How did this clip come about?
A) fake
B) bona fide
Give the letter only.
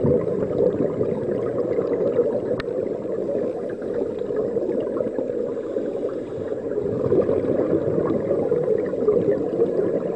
B